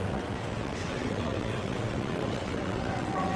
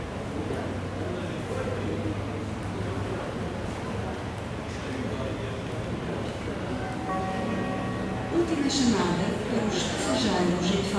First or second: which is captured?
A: second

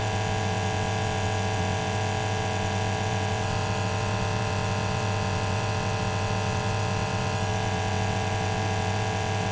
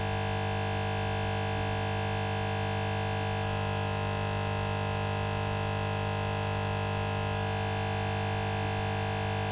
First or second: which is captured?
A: second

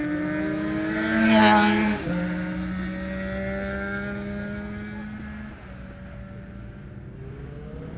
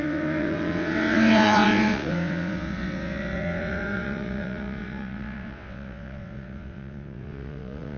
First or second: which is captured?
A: first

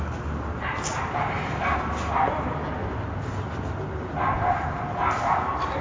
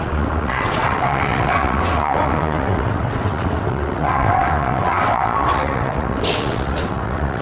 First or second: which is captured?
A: first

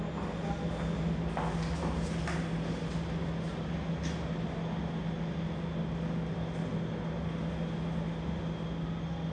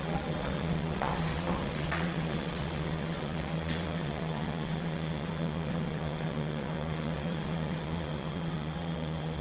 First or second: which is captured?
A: first